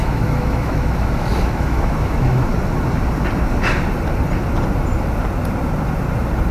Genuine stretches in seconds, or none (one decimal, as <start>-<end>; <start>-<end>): 2.5-6.5